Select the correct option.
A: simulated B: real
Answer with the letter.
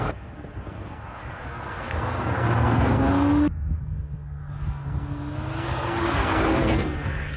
A